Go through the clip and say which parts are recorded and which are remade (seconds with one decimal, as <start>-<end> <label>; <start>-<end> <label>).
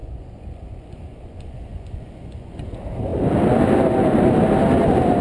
0.0-2.7 remade; 2.7-5.2 recorded